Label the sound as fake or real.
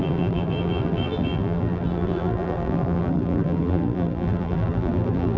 fake